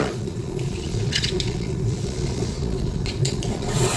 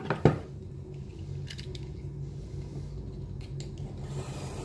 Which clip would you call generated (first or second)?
first